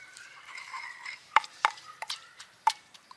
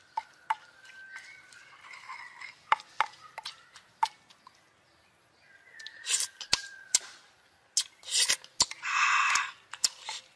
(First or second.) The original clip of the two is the second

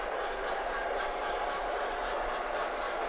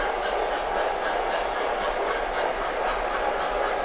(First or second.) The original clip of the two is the second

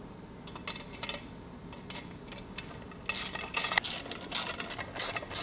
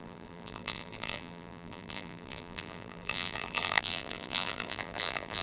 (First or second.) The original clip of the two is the first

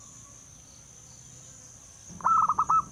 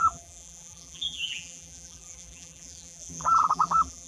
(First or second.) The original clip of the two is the first